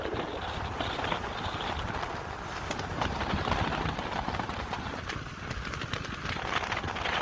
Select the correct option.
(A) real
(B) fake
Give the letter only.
A